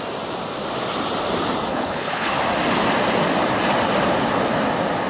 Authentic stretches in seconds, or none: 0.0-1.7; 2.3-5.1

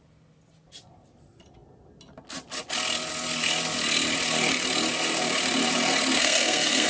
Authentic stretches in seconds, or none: 0.0-6.2